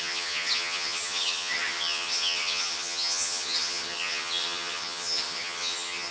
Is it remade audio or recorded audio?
remade